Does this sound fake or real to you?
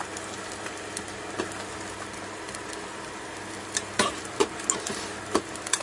real